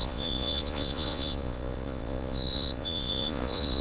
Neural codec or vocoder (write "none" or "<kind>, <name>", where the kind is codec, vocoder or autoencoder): vocoder, Vocos